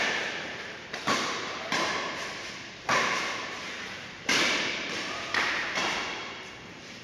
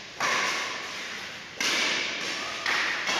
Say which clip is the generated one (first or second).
first